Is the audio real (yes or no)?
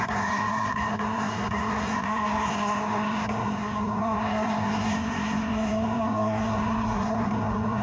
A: no